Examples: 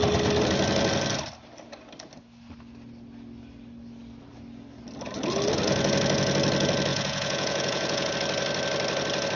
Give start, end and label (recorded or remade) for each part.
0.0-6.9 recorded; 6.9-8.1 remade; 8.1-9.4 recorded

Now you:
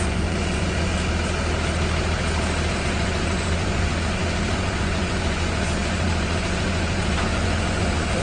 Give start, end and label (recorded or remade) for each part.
0.0-0.9 remade; 0.9-2.8 recorded; 2.8-8.2 remade

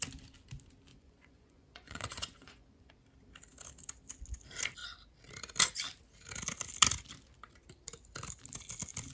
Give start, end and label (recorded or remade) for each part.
0.0-0.9 recorded; 0.9-2.9 remade; 2.9-9.1 recorded

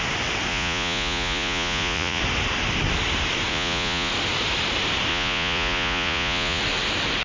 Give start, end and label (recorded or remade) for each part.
0.0-0.5 recorded; 0.5-2.2 remade; 2.2-3.5 recorded; 3.5-4.1 remade; 4.1-5.1 recorded; 5.1-6.6 remade; 6.6-7.2 recorded

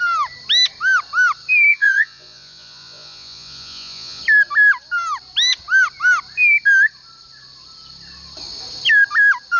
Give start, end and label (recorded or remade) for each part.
0.0-1.7 recorded; 1.7-4.2 remade; 4.2-9.6 recorded

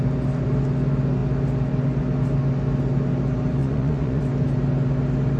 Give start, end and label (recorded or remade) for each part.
0.0-3.6 recorded; 3.6-4.2 remade; 4.2-5.4 recorded

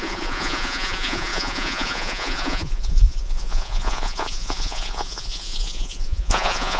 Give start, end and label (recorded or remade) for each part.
0.0-6.8 remade

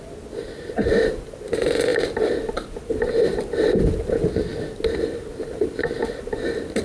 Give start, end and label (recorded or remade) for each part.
0.0-6.8 recorded